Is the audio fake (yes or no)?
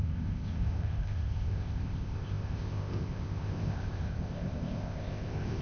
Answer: yes